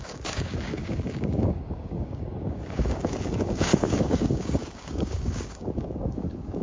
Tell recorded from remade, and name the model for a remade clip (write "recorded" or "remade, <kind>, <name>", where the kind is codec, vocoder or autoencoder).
remade, codec, DAC